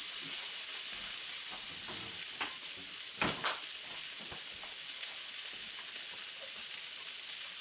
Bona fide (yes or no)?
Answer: yes